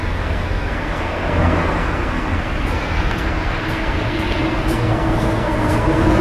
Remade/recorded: remade